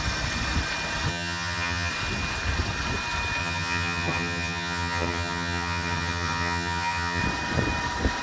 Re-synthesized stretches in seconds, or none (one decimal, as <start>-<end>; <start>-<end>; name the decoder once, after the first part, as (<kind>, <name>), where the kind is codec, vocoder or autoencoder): 1.1-1.9 (vocoder, HiFi-GAN); 3.4-7.2